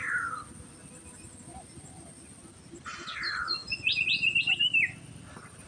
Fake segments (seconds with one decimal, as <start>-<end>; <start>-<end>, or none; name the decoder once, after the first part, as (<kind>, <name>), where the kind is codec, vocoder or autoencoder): 1.5-2.1 (vocoder, BigVGAN v2)